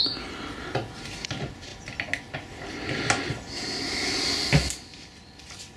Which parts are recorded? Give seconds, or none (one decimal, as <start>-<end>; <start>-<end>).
0.0-5.8